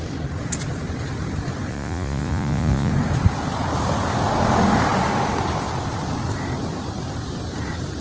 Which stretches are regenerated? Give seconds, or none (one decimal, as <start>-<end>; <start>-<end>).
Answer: 1.7-2.9